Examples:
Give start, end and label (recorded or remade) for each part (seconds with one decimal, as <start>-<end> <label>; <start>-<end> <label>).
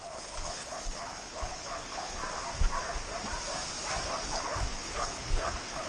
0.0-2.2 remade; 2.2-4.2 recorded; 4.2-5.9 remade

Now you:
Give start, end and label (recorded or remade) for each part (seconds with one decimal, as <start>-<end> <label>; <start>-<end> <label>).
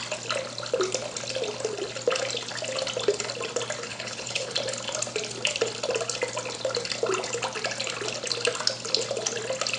0.0-3.9 recorded; 3.9-4.5 remade; 4.5-9.8 recorded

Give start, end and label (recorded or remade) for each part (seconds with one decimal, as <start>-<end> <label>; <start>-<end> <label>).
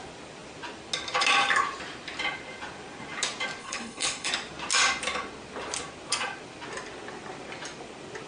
0.0-3.6 recorded; 3.6-4.3 remade; 4.3-8.3 recorded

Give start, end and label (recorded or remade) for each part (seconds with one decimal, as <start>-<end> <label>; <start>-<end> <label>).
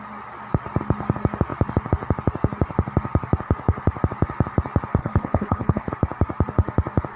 0.0-5.0 recorded; 5.0-5.9 remade; 5.9-7.2 recorded